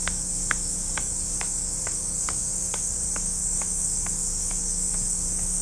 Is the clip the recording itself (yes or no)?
no